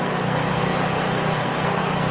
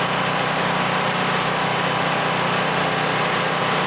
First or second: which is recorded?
second